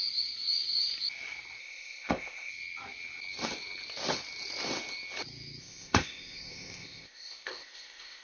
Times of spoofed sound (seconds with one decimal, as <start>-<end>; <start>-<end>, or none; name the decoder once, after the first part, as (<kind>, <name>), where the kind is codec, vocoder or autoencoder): 1.6-2.5 (codec, ZipCodec); 5.6-8.2